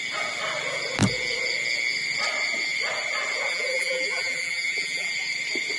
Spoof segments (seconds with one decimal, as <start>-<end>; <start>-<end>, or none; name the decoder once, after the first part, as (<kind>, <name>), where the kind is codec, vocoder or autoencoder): 3.5-5.1 (vocoder, BigVGAN v2)